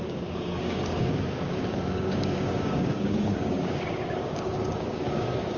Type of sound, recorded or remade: remade